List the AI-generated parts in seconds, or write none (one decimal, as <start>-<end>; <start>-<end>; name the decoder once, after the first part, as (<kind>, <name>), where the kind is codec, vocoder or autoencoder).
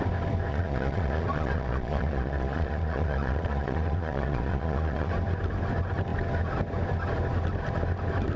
0.5-5.1 (vocoder, Vocos)